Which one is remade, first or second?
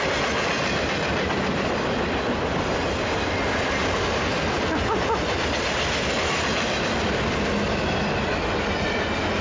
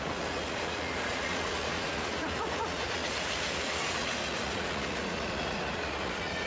second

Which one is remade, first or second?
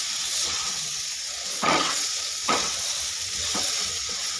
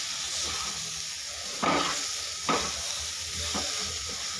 first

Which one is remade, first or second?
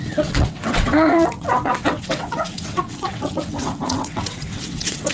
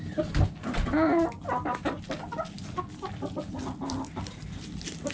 first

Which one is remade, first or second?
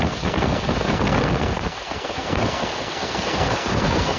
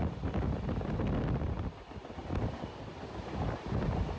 first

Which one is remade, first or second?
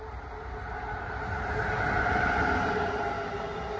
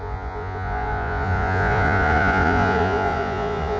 second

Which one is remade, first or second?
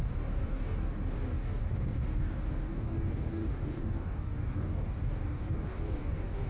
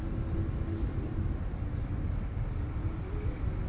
first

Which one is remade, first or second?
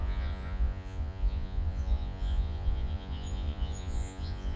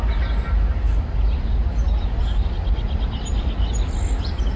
first